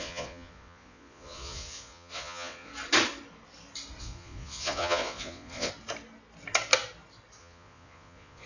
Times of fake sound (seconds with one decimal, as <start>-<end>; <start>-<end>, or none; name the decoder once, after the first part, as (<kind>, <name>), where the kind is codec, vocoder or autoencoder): 0.0-2.7 (vocoder, Vocos); 4.0-5.7; 7.4-8.5